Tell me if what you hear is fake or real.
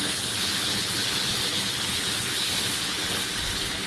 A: fake